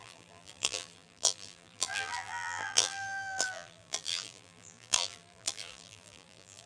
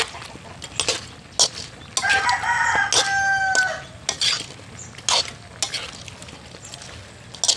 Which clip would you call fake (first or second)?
first